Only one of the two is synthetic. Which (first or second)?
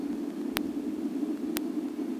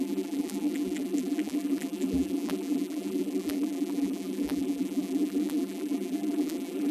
second